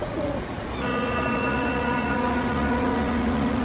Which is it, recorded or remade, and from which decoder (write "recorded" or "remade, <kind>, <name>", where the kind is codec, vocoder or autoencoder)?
remade, vocoder, Vocos